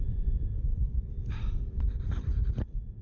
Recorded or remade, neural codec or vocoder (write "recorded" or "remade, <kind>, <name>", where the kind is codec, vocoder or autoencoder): remade, vocoder, BigVGAN v2